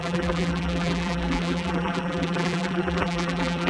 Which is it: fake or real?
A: fake